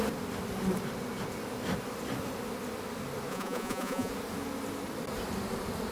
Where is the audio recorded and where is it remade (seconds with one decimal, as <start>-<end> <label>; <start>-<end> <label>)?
0.0-3.3 recorded; 3.3-4.1 remade; 4.1-5.9 recorded